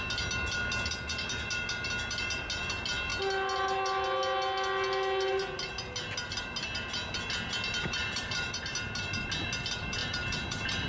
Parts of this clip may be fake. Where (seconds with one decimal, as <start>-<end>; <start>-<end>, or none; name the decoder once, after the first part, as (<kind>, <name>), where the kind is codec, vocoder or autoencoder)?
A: 8.0-8.6 (vocoder, BigVGAN v2); 10.0-10.9